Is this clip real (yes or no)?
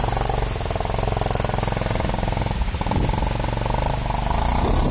yes